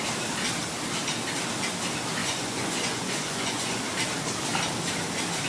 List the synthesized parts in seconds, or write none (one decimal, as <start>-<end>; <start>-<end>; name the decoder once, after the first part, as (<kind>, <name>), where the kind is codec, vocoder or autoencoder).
2.2-3.8 (vocoder, Vocos)